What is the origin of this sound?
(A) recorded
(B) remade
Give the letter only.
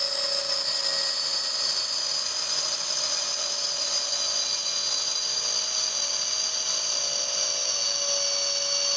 A